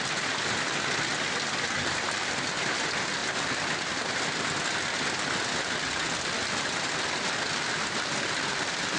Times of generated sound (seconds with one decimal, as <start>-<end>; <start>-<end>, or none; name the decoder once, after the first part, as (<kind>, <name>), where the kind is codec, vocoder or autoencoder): none